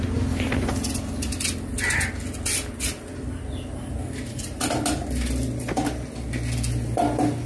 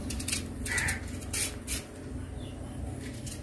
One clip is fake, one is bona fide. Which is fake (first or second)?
second